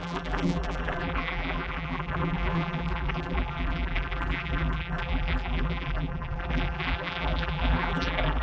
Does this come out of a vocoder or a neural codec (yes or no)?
yes